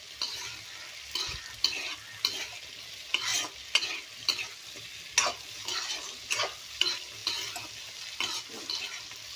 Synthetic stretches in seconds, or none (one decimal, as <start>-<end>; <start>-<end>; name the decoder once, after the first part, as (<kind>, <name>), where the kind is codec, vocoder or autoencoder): none